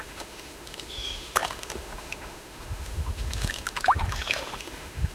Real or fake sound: fake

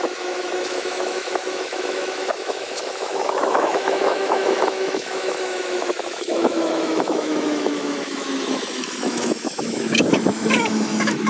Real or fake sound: fake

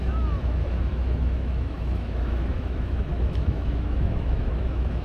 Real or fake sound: fake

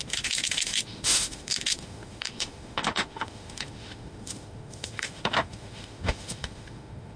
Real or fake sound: fake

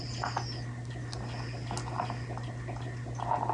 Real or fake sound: real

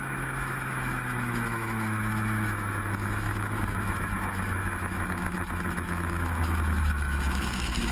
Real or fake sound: fake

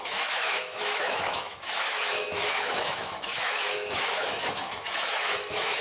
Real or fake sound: fake